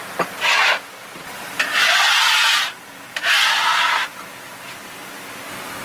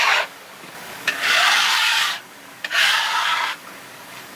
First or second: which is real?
first